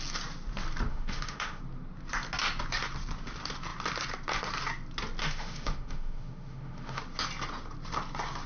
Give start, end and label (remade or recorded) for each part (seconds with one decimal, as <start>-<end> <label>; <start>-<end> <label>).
0.0-0.9 recorded; 0.9-1.6 remade; 1.6-5.2 recorded; 5.2-7.0 remade; 7.0-8.5 recorded